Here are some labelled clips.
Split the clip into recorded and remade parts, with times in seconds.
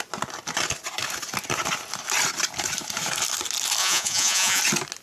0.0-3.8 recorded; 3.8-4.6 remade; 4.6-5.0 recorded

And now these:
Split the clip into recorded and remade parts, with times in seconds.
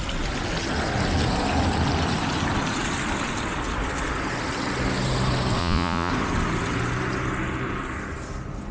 0.0-5.6 recorded; 5.6-6.1 remade; 6.1-8.7 recorded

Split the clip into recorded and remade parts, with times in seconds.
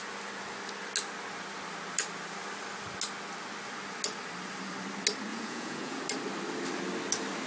0.0-5.3 recorded; 5.3-6.0 remade; 6.0-7.5 recorded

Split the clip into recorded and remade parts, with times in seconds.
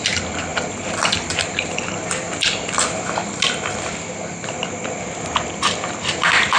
0.0-6.6 recorded